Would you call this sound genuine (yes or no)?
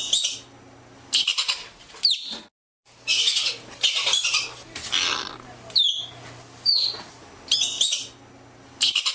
yes